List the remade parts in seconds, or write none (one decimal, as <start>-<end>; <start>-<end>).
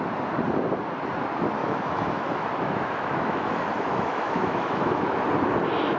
1.6-5.2